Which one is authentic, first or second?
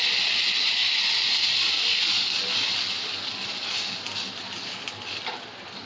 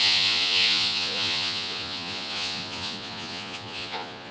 first